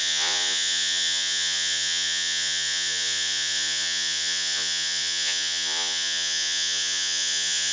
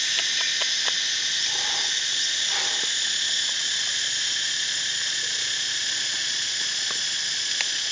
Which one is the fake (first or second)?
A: first